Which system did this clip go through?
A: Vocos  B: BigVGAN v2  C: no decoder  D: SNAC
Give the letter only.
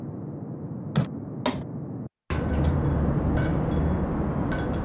C